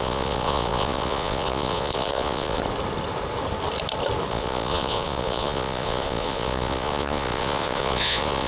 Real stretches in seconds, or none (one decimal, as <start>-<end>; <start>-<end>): 2.6-4.3